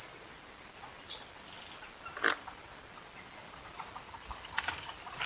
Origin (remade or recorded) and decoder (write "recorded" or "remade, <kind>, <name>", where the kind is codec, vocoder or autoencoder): recorded